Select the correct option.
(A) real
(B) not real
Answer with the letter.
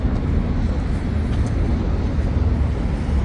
A